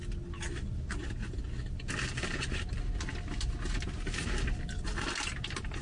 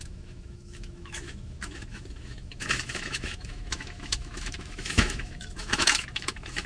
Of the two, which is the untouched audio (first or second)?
first